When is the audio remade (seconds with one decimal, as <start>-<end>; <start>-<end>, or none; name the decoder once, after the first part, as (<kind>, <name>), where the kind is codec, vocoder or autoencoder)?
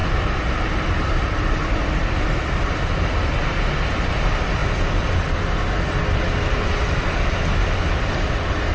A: 0.0-2.8 (vocoder, BigVGAN v2)